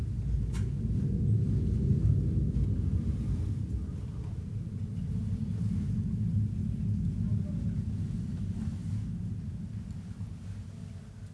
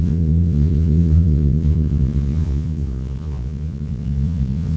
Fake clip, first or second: second